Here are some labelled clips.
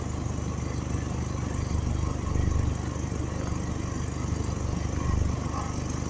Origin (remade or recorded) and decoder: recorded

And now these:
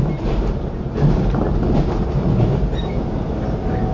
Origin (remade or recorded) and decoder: recorded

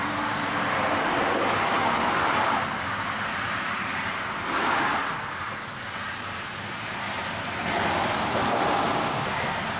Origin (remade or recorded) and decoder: recorded